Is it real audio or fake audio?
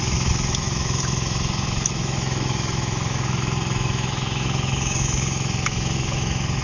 fake